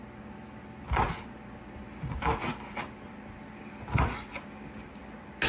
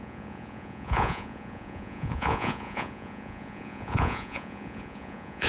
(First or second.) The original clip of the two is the first